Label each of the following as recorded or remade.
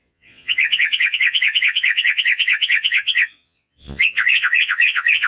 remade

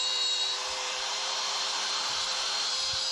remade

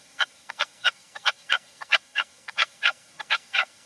remade